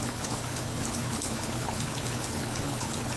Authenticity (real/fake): fake